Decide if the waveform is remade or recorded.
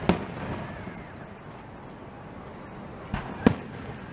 recorded